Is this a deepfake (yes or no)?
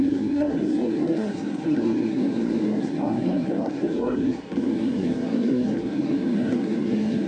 yes